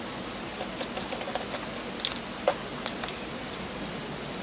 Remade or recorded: recorded